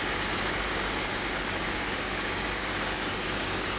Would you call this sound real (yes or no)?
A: no